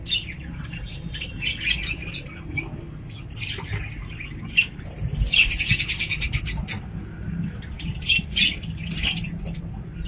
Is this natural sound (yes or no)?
yes